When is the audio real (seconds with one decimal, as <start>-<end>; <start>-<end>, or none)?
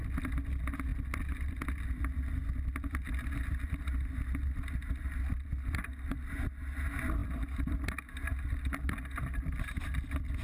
0.0-10.4